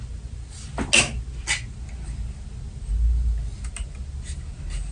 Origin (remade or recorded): recorded